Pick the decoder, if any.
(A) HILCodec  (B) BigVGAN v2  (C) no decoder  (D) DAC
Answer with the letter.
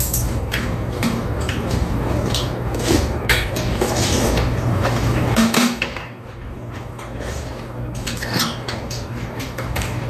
D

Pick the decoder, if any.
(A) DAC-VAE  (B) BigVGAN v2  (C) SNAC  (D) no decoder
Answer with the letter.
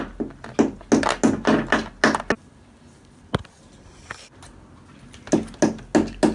D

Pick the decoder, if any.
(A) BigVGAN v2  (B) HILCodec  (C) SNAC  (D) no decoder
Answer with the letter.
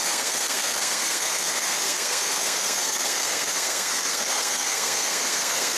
C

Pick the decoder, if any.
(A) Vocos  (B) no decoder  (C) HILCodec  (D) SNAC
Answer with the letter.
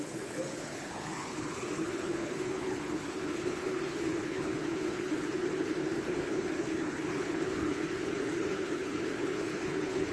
C